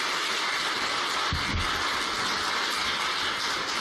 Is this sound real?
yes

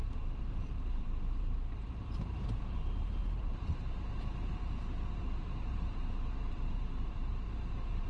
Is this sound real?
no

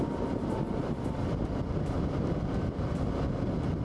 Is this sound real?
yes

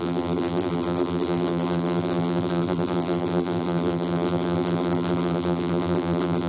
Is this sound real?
no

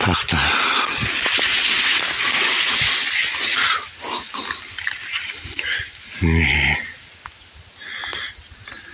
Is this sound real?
yes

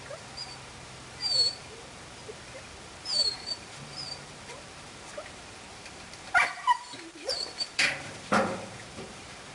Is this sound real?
no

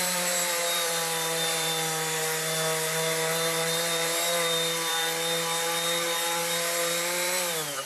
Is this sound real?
no